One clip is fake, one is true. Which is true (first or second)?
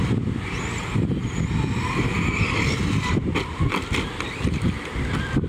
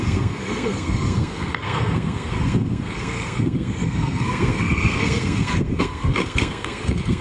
first